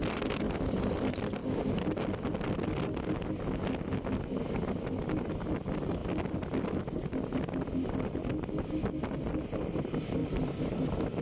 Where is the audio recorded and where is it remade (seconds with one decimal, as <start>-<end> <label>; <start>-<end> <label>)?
0.0-11.2 recorded